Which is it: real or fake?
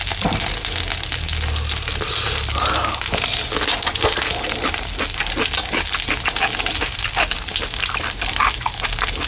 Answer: real